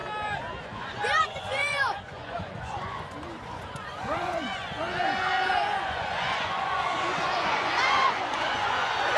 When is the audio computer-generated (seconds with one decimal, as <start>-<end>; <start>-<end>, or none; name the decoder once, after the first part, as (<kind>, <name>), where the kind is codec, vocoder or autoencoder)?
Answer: 0.6-9.2 (vocoder, Vocos)

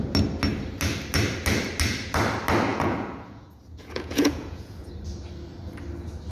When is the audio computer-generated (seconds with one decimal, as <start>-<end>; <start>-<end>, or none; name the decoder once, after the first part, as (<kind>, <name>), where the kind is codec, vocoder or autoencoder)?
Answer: 2.7-4.9 (vocoder, Vocos)

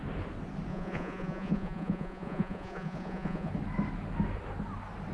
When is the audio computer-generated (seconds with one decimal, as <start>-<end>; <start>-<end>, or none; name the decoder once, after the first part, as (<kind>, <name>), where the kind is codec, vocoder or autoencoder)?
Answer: 0.7-3.5 (vocoder, Vocos)